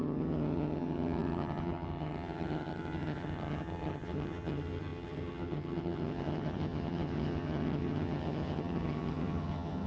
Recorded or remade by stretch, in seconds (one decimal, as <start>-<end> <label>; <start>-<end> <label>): 0.0-9.9 remade